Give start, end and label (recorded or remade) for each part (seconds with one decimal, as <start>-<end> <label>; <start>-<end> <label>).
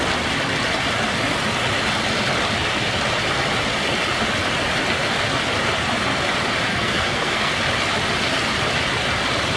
0.0-6.7 recorded; 6.7-7.5 remade; 7.5-9.6 recorded